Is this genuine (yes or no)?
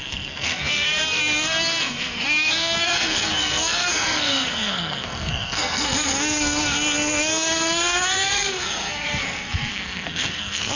no